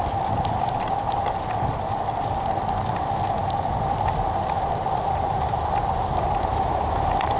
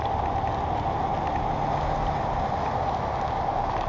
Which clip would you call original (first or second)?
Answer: second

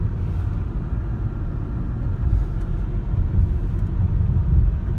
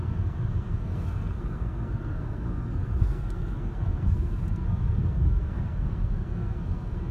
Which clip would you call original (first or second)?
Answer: first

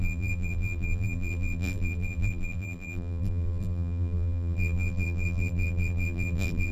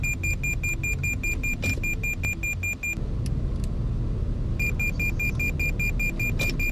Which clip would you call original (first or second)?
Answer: second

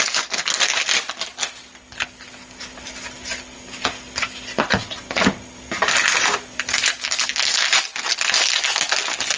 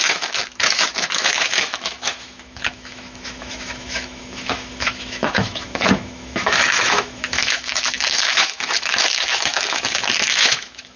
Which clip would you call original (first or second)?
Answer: first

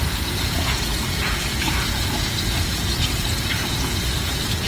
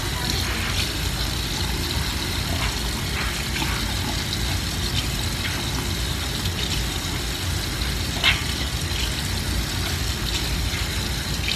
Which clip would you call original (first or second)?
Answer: second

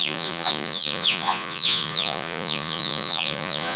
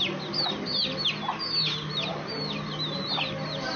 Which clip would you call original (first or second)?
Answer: second